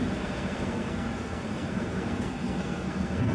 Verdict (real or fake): fake